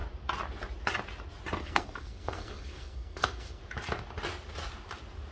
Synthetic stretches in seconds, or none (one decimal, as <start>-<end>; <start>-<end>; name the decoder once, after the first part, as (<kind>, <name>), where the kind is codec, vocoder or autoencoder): 1.6-3.6 (codec, SNAC)